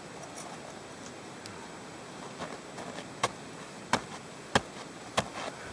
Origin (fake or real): real